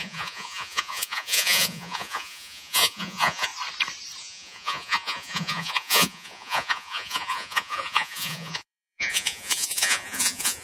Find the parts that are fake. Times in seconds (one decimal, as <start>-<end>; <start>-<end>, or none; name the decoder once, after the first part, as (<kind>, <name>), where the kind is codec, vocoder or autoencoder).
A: 0.0-3.5 (vocoder, Vocos); 4.2-10.6